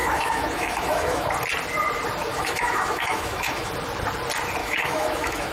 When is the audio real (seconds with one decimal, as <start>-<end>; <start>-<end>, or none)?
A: 1.3-2.3; 3.7-4.6